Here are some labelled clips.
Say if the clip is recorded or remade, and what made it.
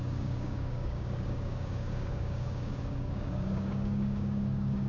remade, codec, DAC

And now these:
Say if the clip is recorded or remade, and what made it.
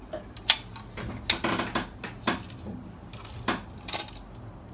recorded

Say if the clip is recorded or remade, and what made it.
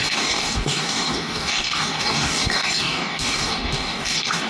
remade, codec, DAC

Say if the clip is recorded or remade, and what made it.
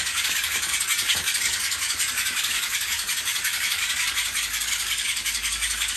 remade, codec, DAC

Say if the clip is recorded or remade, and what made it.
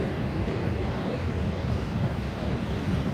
remade, codec, DAC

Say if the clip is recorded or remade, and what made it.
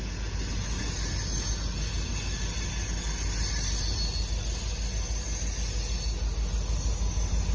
recorded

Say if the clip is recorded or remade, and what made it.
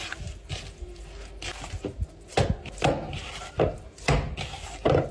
recorded